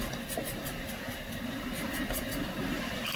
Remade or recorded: remade